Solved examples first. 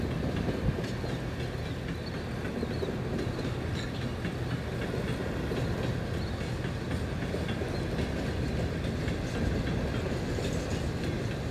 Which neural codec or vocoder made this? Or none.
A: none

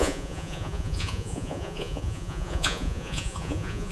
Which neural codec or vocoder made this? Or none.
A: vocoder, Vocos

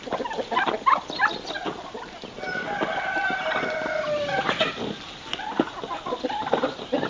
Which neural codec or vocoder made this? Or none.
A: none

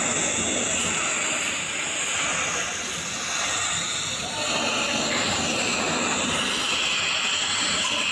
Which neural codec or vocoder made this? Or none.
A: none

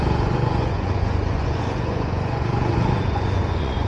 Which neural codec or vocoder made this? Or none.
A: vocoder, Vocos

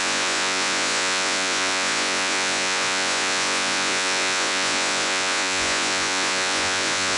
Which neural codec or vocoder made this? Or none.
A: vocoder, Vocos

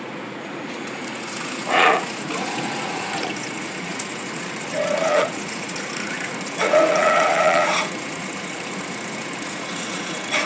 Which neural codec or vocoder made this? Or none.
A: vocoder, Vocos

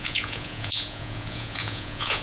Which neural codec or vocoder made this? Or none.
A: vocoder, Vocos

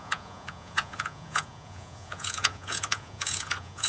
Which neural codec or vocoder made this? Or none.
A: vocoder, Vocos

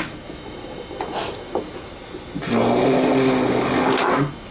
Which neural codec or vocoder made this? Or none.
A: none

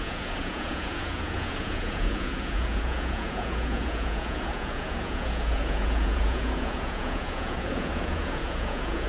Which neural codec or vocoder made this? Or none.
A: vocoder, Vocos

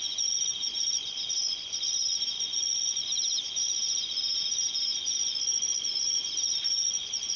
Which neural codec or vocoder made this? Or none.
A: vocoder, Vocos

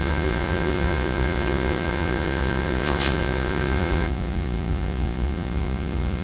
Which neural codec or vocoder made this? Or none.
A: vocoder, Vocos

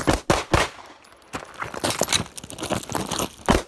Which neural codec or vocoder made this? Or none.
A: none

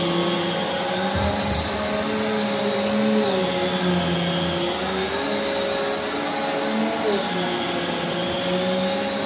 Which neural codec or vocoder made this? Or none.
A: none